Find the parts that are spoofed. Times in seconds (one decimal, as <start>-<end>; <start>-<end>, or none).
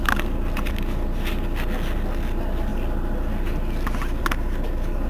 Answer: none